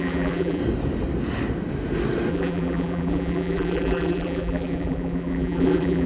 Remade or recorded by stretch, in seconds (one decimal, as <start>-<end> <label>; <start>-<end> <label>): 0.0-0.6 remade; 0.6-2.3 recorded; 2.3-6.1 remade